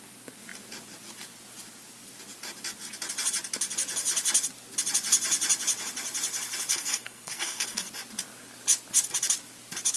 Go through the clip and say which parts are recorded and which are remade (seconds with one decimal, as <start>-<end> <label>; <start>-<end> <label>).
0.0-6.7 recorded; 6.7-7.9 remade; 7.9-10.0 recorded